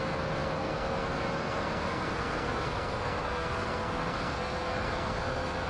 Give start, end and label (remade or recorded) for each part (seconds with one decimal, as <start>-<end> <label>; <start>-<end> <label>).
0.0-5.7 remade